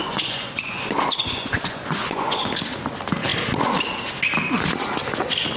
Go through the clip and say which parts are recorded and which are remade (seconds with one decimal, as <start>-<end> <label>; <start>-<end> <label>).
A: 0.0-2.4 remade; 2.4-5.6 recorded

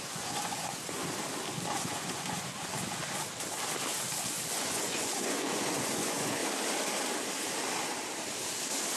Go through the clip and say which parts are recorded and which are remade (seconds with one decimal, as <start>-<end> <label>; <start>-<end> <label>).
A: 0.0-1.0 remade; 1.0-1.7 recorded; 1.7-2.7 remade; 2.7-4.4 recorded; 4.4-6.4 remade; 6.4-9.0 recorded

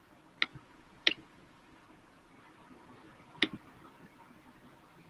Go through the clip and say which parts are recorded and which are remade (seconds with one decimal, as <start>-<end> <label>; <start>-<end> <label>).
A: 0.0-0.5 recorded; 0.5-2.3 remade; 2.3-5.1 recorded